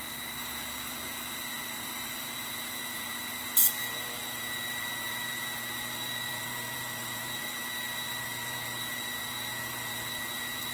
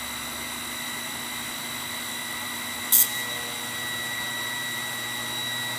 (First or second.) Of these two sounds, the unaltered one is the second